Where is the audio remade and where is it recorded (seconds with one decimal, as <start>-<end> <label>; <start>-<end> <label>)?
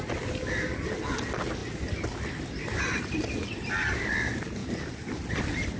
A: 0.0-5.8 recorded